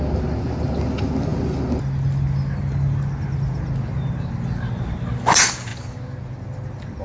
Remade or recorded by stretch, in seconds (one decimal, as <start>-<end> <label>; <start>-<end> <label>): 0.0-7.0 recorded